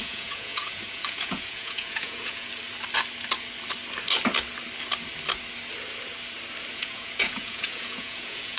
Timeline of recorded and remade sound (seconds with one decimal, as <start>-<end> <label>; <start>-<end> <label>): 0.0-2.5 remade; 2.5-6.7 recorded; 6.7-8.6 remade